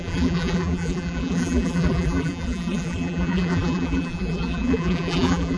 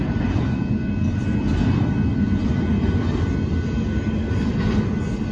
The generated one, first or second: first